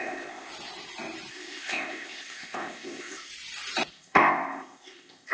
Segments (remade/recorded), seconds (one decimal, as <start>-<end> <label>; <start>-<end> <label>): 0.0-0.5 remade; 0.5-1.3 recorded; 1.3-3.3 remade; 3.3-3.9 recorded; 3.9-5.3 remade